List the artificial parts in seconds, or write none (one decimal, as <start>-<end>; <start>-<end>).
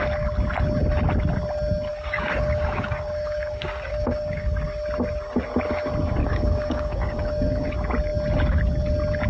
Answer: 1.9-4.7; 6.2-7.7